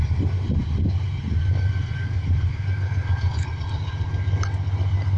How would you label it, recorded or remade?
recorded